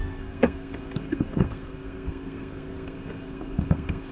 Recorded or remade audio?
remade